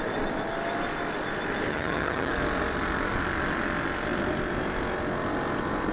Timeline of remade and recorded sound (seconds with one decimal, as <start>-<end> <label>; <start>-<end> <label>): 0.0-1.7 recorded; 1.7-2.3 remade; 2.3-5.9 recorded